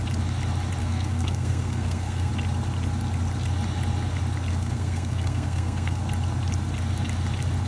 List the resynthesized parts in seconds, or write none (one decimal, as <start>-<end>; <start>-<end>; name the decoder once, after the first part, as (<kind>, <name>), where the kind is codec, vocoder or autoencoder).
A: 0.8-2.3 (codec, SNAC); 4.5-6.0